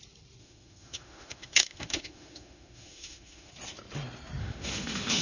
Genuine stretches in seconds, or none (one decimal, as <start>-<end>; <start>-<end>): 0.0-0.4; 3.5-4.4